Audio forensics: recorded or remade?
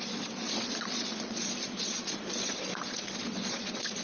remade